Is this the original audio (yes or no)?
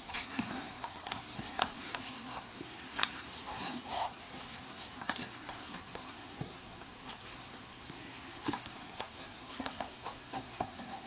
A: no